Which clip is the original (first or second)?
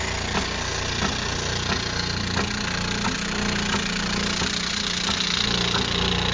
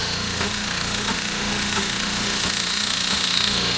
first